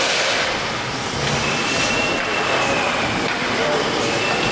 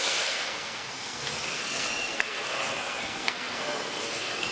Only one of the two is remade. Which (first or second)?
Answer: second